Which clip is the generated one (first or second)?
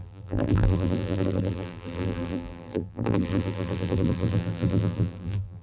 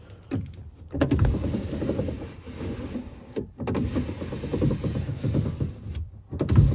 first